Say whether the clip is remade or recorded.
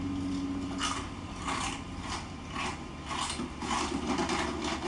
recorded